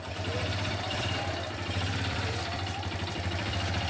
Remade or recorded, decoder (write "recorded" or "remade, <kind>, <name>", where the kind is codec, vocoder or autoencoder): remade, vocoder, BigVGAN v2